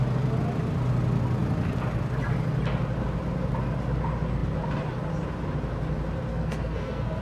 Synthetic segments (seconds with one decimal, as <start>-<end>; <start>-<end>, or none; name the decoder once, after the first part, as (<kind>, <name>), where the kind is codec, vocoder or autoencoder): 6.3-7.2 (codec, SNAC)